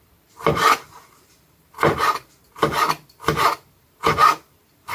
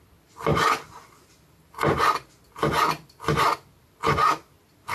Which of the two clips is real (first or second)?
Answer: second